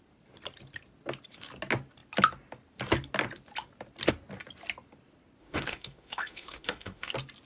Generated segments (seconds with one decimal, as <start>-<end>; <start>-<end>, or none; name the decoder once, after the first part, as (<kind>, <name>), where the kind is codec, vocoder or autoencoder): 5.4-7.1 (autoencoder, DAC-VAE)

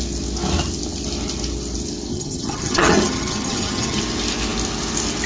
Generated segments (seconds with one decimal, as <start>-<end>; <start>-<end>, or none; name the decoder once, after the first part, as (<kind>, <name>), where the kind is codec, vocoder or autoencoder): 2.1-4.0 (vocoder, HiFi-GAN)

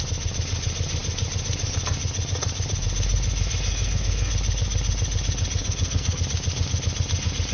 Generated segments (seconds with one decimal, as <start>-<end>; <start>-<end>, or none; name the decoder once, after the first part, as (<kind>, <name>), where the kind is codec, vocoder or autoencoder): 3.7-4.3 (codec, SNAC); 5.6-6.2

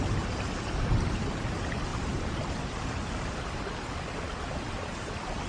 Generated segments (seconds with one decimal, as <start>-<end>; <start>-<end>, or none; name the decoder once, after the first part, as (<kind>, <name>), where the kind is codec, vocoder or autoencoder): 1.9-3.1 (vocoder, BigVGAN v2)

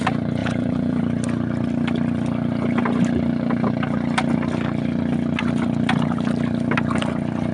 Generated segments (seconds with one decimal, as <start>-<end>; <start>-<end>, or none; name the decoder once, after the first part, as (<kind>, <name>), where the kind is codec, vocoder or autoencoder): 0.4-1.0 (vocoder, Vocos)